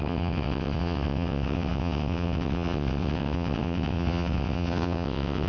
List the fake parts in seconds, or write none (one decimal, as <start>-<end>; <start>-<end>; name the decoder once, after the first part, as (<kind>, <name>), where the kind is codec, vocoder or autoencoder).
0.0-5.5 (vocoder, WaveNeXt)